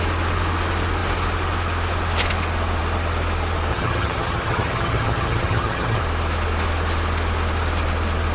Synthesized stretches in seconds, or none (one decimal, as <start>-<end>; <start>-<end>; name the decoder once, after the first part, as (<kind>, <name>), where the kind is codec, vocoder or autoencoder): 3.7-6.0 (vocoder, HiFi-GAN)